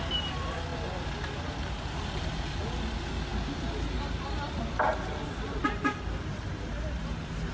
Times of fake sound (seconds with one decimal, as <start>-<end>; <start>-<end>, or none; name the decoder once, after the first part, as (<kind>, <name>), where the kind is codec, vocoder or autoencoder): none